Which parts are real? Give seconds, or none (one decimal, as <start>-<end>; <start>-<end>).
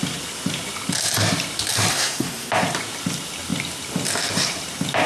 0.0-1.9; 2.5-5.1